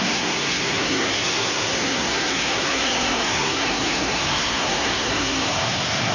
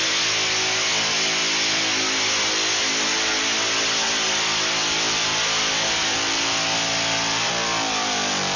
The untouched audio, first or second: second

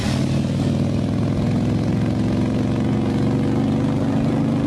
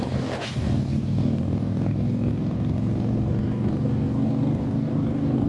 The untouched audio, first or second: first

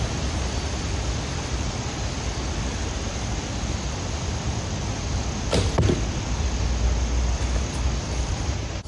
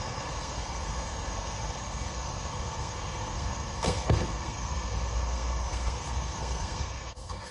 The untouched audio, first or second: first